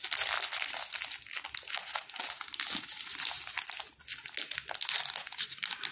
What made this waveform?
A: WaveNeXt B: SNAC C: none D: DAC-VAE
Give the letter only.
C